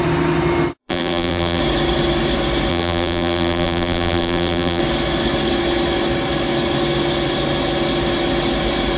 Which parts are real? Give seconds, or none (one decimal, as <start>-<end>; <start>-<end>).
0.0-0.8; 1.6-2.7; 4.8-9.0